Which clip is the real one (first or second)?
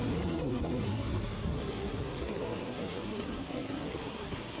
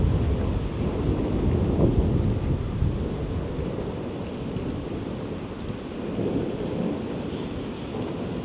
second